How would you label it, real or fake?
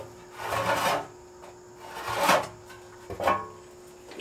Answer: real